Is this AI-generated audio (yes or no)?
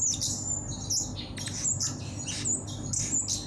no